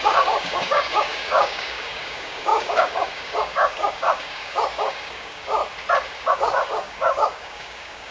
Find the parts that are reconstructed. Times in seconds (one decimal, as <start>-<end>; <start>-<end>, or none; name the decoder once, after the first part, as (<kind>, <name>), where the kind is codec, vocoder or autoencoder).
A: 0.0-5.6 (codec, DAC); 6.3-8.1